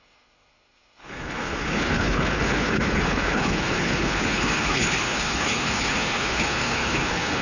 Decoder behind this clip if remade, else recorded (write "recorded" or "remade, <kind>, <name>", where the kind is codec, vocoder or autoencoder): remade, codec, HILCodec